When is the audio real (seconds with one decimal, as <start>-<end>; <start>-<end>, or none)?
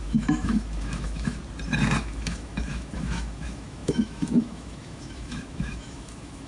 1.4-2.0